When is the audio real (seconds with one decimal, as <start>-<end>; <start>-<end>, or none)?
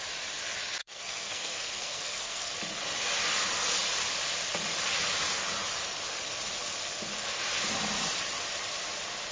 0.0-0.8; 2.5-9.3